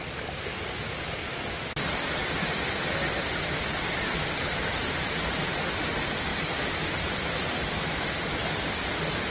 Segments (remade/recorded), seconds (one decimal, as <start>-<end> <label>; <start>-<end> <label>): 0.0-2.2 recorded; 2.2-3.2 remade; 3.2-6.3 recorded; 6.3-7.7 remade; 7.7-9.3 recorded